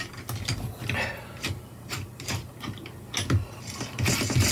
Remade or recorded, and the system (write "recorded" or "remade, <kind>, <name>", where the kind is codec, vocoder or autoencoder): recorded